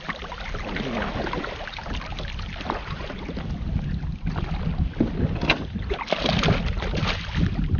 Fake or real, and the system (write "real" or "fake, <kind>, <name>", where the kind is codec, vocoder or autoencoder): real